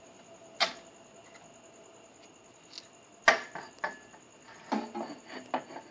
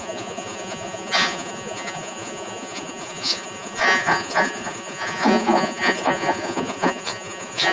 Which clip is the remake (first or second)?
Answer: second